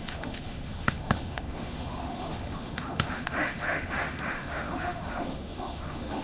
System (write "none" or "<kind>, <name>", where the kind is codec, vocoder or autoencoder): autoencoder, DAC-VAE